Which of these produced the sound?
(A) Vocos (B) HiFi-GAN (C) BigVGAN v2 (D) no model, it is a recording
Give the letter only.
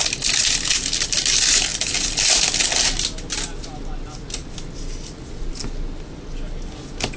D